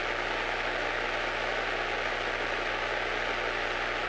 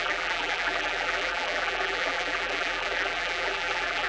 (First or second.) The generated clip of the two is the second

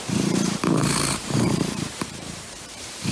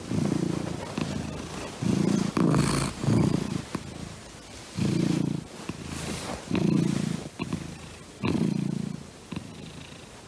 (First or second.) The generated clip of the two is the first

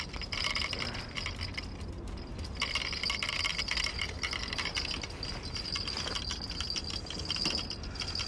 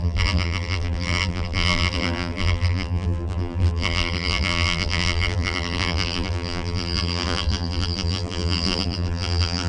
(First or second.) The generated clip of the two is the second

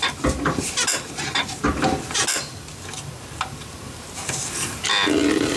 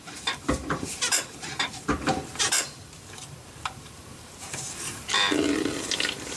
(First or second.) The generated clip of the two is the second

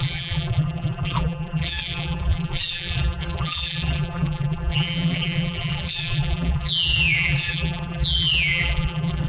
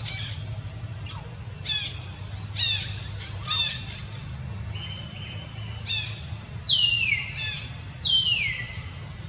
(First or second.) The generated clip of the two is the first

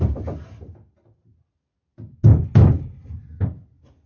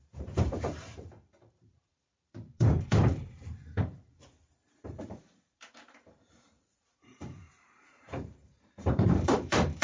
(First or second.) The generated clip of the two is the second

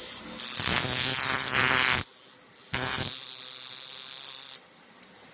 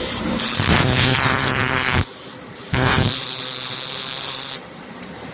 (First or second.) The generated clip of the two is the second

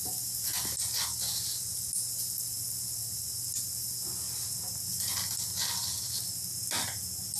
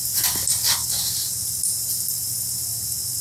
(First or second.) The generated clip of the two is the second